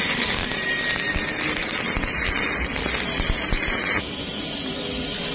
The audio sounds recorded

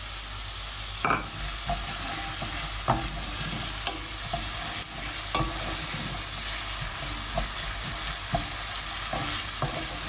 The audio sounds recorded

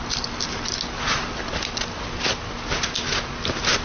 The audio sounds recorded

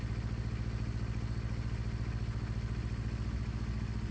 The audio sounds recorded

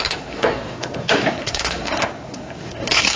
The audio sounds remade